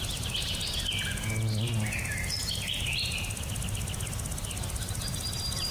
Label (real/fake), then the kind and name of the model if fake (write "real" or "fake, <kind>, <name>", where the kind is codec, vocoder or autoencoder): real